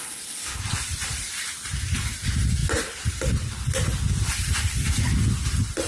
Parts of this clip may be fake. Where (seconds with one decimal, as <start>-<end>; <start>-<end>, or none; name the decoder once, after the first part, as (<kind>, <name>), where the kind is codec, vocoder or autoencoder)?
0.0-0.6 (codec, HILCodec)

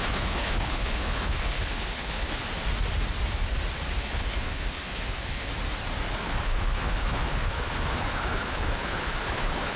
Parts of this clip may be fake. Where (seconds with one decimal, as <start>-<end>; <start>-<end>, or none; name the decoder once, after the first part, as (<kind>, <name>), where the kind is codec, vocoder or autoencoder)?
0.0-2.4 (codec, HILCodec); 4.0-5.5; 6.1-9.8

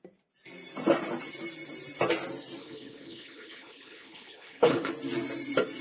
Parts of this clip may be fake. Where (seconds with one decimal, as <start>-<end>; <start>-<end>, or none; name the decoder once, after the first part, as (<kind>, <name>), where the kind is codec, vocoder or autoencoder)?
2.6-4.9 (codec, HILCodec)

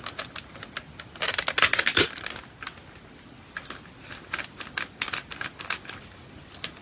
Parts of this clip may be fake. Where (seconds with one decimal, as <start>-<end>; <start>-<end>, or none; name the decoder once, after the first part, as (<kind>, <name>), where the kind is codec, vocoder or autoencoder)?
none

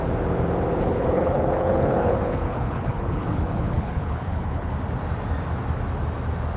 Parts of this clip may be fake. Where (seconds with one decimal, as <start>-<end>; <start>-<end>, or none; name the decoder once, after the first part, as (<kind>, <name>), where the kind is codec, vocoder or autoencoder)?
0.7-4.7 (codec, HILCodec)

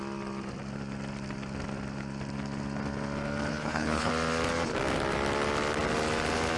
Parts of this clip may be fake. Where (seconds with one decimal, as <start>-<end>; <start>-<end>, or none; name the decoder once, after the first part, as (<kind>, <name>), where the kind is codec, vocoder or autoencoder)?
3.5-4.1 (codec, HILCodec)